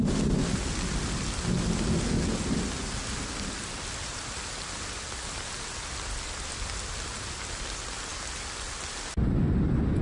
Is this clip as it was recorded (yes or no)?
yes